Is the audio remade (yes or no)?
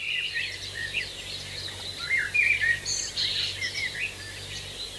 no